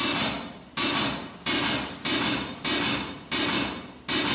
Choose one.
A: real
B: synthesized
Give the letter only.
A